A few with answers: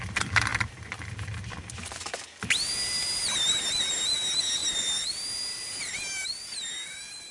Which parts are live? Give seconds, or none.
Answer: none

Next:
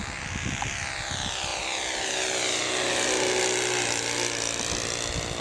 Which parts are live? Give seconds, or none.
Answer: 0.0-5.4